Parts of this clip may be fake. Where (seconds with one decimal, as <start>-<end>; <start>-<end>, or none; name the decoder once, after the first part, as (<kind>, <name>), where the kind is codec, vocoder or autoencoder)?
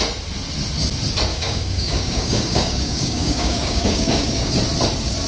1.3-4.5 (codec, DAC)